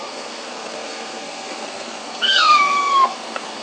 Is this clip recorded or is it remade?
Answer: remade